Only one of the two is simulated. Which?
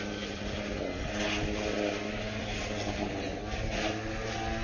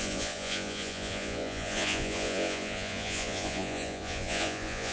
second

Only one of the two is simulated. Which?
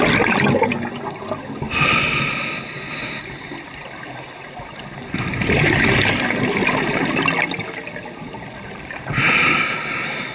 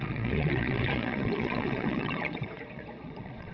second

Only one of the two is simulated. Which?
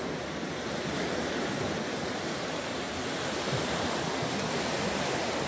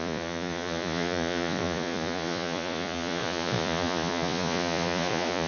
second